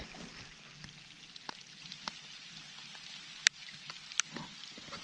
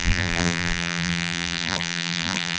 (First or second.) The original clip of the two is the first